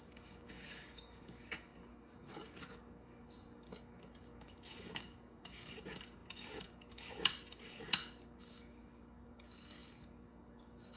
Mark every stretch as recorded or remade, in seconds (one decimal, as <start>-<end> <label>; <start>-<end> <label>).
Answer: 0.0-11.0 remade